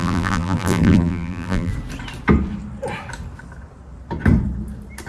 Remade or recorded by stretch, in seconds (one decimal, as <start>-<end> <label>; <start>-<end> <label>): 0.0-1.7 remade; 1.7-5.1 recorded